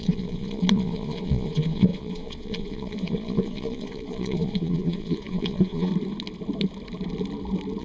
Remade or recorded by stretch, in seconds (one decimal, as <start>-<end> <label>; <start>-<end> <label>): 0.0-5.9 remade; 5.9-7.8 recorded

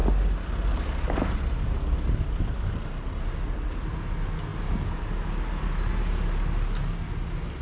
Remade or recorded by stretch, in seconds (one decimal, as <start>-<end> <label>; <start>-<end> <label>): 0.0-7.6 recorded

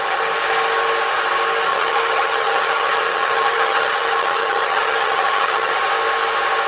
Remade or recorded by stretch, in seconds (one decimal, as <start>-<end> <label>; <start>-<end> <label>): 0.0-1.7 recorded; 1.7-5.7 remade; 5.7-6.7 recorded

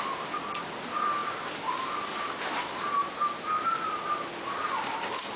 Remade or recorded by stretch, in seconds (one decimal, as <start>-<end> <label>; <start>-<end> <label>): 0.0-1.2 recorded; 1.2-2.2 remade; 2.2-3.0 recorded; 3.0-3.6 remade; 3.6-5.4 recorded